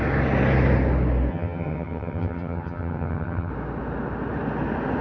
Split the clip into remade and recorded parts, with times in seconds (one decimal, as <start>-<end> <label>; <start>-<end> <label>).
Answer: 0.0-1.3 recorded; 1.3-3.5 remade; 3.5-5.0 recorded